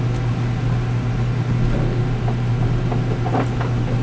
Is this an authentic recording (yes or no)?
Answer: yes